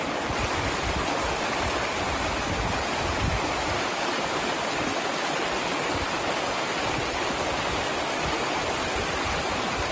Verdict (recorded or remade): recorded